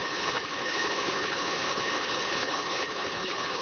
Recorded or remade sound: remade